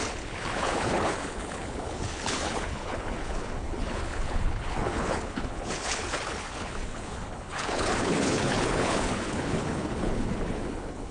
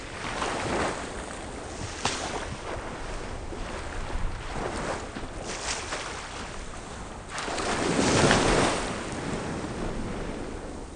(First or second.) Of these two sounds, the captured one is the second